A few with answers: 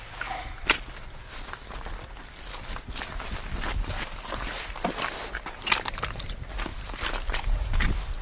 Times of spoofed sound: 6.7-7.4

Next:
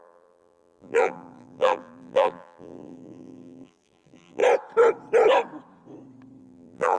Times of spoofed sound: 0.0-4.4; 6.4-7.0

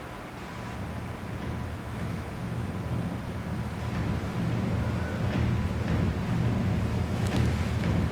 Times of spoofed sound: 1.8-2.7; 6.9-7.5

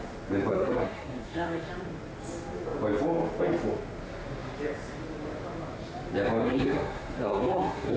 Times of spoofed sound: 0.5-1.7; 6.4-8.0

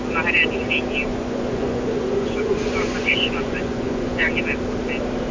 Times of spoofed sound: 1.1-4.3